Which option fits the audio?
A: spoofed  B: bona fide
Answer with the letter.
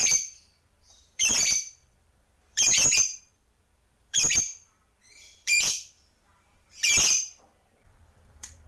A